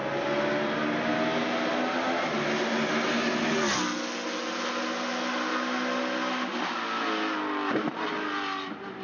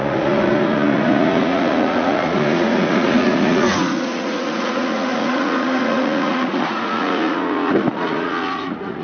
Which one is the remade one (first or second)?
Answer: second